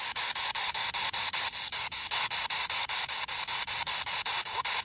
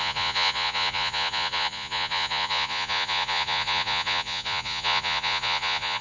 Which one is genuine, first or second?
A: first